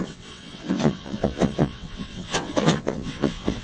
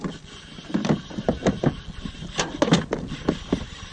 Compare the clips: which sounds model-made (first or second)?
first